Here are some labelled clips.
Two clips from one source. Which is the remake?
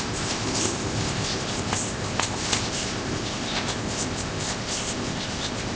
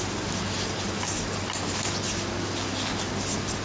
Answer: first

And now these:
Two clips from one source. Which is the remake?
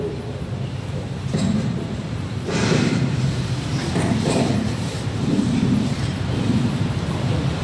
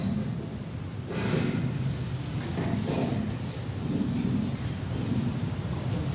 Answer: first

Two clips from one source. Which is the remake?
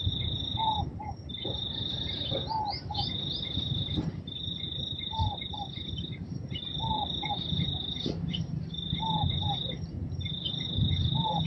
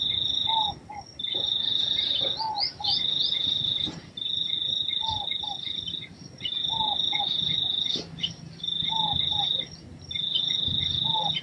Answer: first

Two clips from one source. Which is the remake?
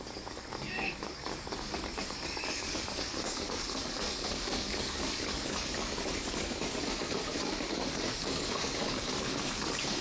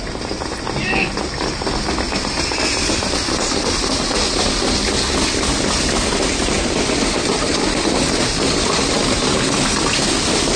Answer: first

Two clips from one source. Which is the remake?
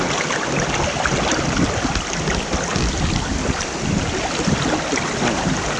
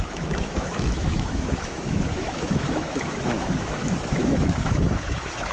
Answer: second